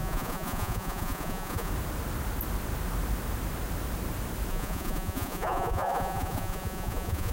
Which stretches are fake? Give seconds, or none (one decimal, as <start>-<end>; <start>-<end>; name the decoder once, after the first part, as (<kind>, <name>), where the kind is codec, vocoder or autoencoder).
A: 0.0-1.7 (vocoder, Vocos); 4.5-7.3